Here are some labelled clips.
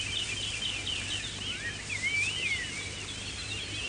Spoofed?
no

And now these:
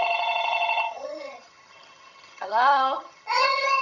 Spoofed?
yes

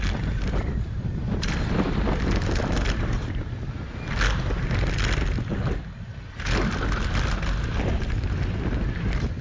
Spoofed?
no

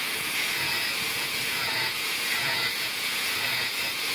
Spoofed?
yes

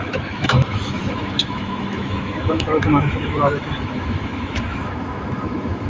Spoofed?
yes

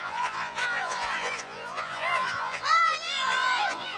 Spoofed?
yes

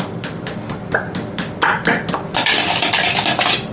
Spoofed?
no